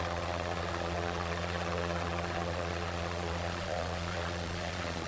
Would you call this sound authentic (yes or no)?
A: no